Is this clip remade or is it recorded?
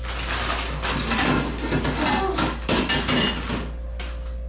recorded